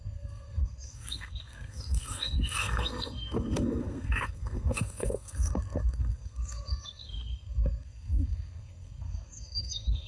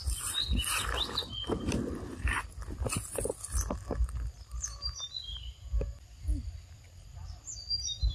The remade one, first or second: first